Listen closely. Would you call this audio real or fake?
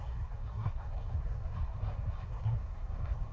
fake